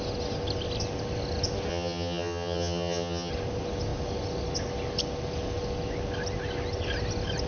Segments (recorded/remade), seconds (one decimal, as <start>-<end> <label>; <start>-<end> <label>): 0.0-1.7 recorded; 1.7-3.3 remade; 3.3-7.5 recorded